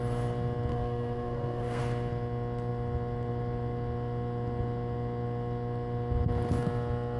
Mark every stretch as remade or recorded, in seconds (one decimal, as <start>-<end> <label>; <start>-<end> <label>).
0.0-0.7 recorded; 0.7-1.8 remade; 1.8-7.2 recorded